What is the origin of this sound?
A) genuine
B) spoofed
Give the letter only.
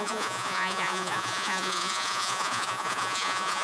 B